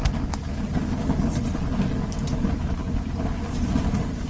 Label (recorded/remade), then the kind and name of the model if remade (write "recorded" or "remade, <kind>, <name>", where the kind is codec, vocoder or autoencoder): recorded